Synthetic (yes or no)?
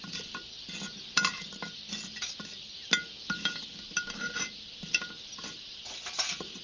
no